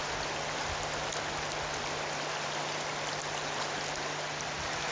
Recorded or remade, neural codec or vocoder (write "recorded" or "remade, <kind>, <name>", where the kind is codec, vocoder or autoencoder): recorded